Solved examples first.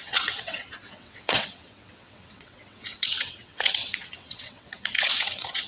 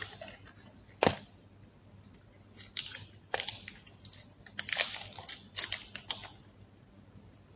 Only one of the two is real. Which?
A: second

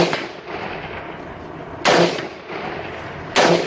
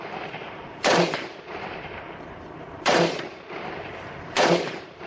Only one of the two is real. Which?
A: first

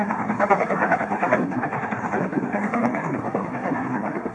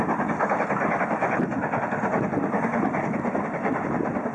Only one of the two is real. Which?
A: second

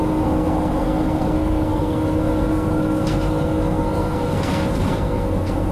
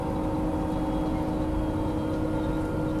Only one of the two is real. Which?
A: second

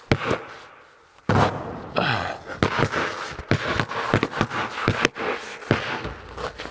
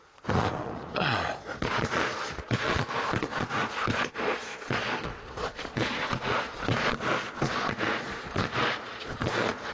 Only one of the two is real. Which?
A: first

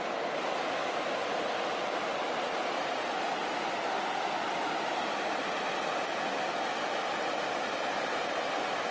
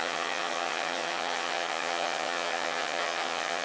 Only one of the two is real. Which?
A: first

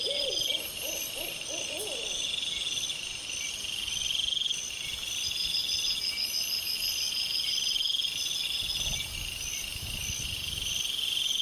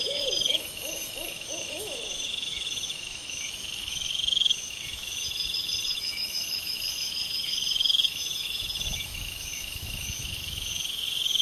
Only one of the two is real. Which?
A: first